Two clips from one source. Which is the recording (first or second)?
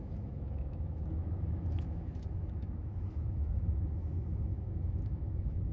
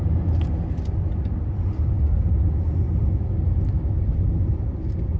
second